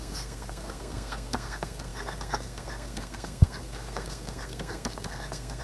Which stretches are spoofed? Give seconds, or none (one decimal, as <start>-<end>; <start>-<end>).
0.0-5.6